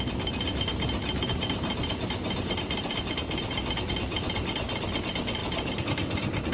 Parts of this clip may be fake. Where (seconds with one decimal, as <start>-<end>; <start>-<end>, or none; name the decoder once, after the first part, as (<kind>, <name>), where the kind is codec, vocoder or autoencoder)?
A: 0.7-3.9 (vocoder, BigVGAN v2); 5.4-6.5